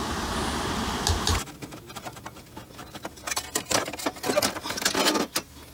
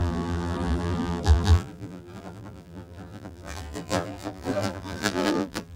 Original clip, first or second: first